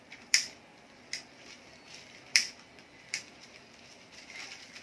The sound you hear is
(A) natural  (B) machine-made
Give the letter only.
B